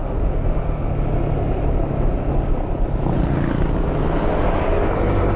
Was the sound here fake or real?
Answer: real